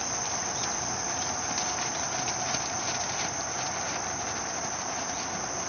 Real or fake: real